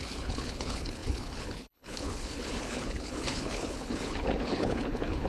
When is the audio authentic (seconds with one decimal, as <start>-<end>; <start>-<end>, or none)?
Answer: none